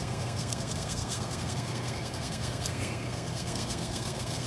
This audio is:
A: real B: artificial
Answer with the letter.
B